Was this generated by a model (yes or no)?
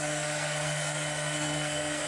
yes